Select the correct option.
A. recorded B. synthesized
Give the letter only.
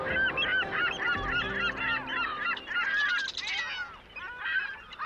A